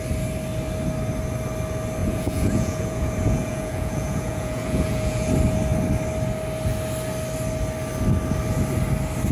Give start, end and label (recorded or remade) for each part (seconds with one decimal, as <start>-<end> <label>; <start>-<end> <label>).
0.0-2.0 recorded; 2.0-5.3 remade; 5.3-9.3 recorded

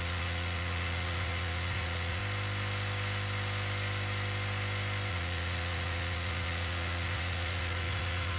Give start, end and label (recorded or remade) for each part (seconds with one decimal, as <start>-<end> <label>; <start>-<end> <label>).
0.0-2.2 remade; 2.2-5.1 recorded; 5.1-8.4 remade